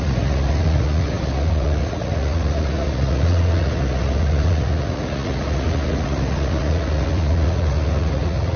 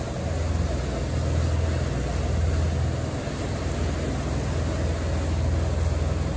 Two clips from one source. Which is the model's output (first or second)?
first